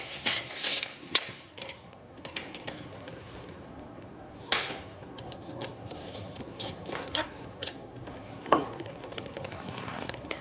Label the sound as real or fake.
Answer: fake